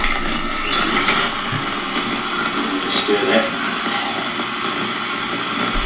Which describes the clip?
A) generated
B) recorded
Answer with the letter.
B